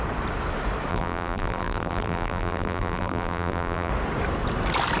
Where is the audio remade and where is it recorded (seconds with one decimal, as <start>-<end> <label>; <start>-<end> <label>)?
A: 0.0-0.9 recorded; 0.9-3.9 remade; 3.9-5.0 recorded